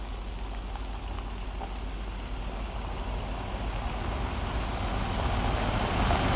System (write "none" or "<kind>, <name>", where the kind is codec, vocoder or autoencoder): none